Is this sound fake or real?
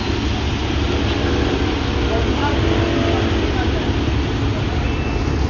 real